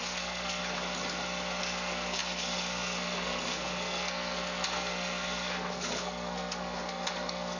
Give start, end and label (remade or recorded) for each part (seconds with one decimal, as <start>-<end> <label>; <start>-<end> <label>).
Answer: 0.0-0.6 remade; 0.6-1.6 recorded; 1.6-7.6 remade